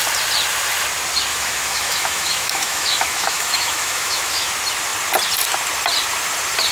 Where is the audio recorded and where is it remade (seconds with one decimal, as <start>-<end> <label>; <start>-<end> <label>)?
0.0-1.3 recorded; 1.3-4.5 remade; 4.5-6.7 recorded